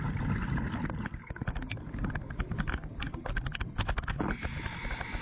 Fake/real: real